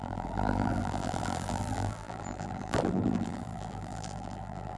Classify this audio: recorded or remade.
remade